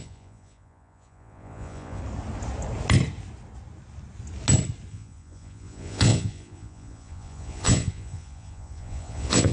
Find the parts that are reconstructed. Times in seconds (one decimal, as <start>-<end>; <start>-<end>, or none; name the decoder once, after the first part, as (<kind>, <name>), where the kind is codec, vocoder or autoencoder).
0.0-2.0 (vocoder, Vocos); 4.9-9.5